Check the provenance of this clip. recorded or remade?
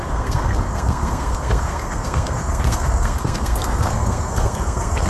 remade